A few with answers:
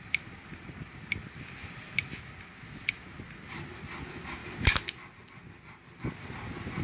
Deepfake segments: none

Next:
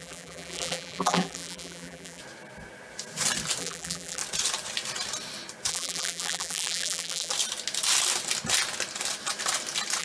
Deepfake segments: 0.0-2.2; 3.6-4.2; 5.7-7.3

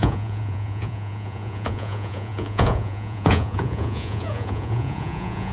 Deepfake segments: 0.0-5.5